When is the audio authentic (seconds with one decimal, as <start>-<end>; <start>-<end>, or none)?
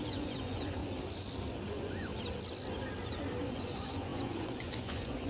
0.8-1.7; 2.1-3.4